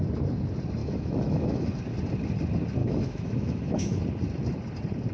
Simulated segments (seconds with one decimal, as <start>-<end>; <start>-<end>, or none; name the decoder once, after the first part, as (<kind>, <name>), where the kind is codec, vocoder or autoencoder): 0.8-1.8 (autoencoder, DAC-VAE); 2.8-4.0